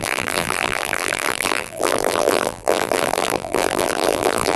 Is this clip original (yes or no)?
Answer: no